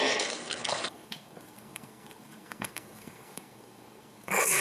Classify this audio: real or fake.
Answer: fake